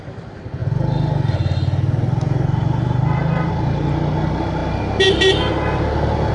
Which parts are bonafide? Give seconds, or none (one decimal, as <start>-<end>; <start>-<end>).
0.0-6.3